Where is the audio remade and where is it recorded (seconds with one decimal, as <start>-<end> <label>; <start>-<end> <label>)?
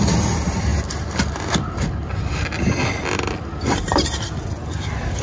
0.0-5.2 recorded